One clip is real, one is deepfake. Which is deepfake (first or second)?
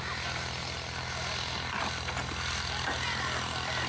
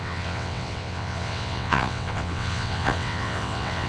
second